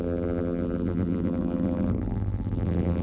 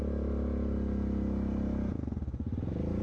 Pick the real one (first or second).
second